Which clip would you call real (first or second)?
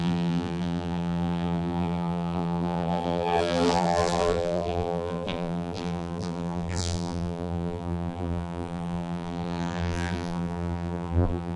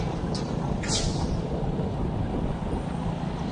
second